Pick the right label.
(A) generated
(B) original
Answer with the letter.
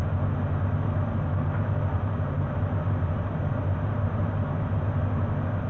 B